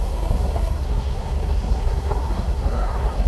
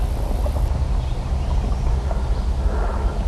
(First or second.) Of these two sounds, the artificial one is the first